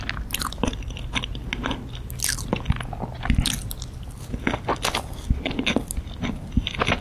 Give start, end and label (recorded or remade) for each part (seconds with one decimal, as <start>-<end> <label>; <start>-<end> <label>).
0.0-7.0 recorded